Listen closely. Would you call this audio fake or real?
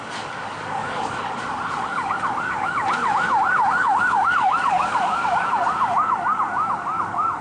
fake